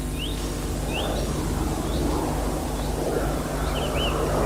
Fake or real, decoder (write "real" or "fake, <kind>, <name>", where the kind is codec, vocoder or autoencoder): real